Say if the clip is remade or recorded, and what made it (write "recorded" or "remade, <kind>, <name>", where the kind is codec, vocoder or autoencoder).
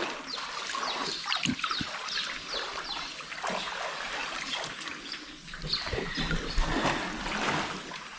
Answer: recorded